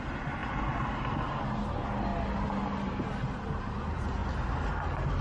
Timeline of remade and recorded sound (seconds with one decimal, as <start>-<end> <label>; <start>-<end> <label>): 0.0-5.2 recorded